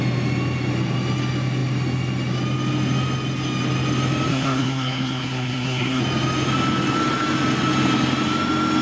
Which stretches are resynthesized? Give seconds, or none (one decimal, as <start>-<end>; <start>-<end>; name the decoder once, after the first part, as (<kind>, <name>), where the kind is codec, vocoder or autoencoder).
4.3-6.0 (codec, SNAC)